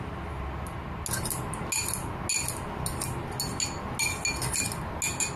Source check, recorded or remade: recorded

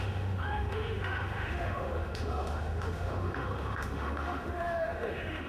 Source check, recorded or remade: remade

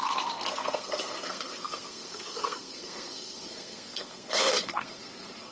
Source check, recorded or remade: remade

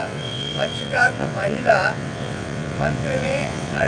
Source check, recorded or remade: remade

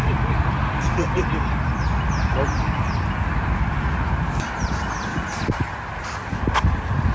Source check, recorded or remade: recorded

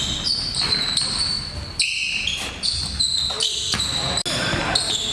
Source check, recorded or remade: recorded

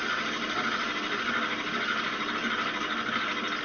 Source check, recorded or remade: recorded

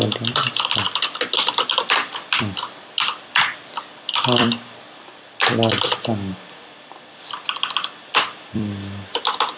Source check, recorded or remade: remade